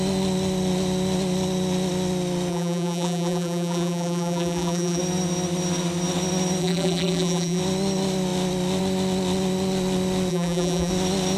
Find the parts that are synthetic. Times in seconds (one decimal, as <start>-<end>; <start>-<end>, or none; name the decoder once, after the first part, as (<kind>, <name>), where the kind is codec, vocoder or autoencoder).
2.5-5.0 (vocoder, BigVGAN v2); 6.6-7.6; 10.3-10.9